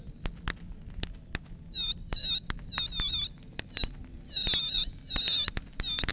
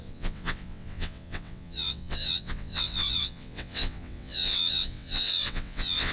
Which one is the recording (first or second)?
first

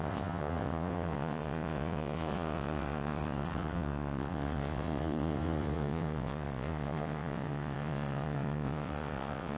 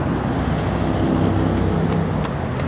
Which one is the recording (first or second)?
second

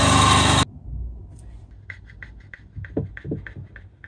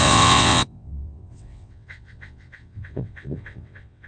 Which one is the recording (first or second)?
first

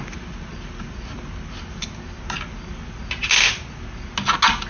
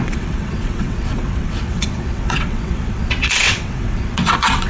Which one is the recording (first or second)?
first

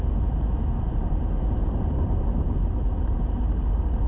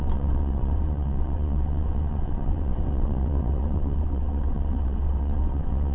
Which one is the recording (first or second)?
first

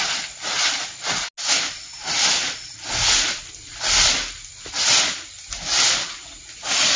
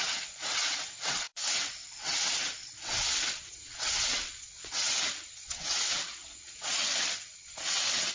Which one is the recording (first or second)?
first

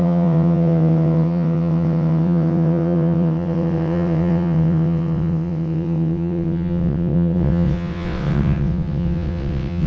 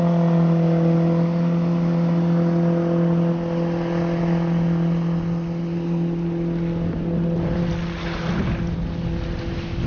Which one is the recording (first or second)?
second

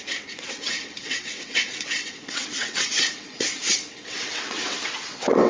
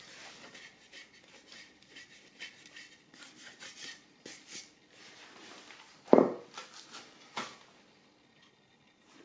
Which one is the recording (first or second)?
second